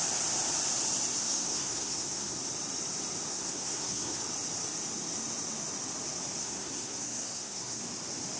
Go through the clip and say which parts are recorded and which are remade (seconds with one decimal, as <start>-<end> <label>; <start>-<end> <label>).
0.0-1.2 recorded; 1.2-2.4 remade; 2.4-3.3 recorded; 3.3-4.2 remade; 4.2-6.4 recorded; 6.4-7.8 remade; 7.8-8.4 recorded